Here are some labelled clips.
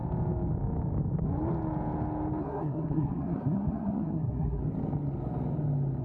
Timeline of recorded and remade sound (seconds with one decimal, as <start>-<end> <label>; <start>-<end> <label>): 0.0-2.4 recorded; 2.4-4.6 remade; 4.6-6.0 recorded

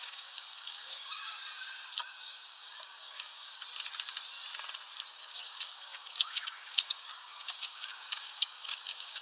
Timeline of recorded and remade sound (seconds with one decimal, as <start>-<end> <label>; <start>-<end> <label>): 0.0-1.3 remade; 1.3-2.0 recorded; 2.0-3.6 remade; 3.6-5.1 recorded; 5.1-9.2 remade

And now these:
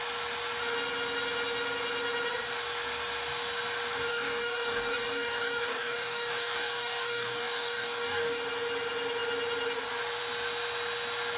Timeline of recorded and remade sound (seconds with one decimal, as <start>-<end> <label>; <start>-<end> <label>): 0.0-4.1 recorded; 4.1-8.4 remade; 8.4-11.4 recorded